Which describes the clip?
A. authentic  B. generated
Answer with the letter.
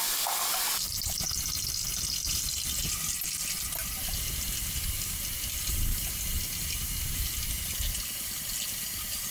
A